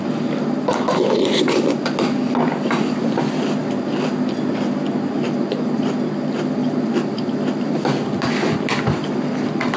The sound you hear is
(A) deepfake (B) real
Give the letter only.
B